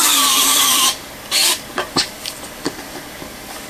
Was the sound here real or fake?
fake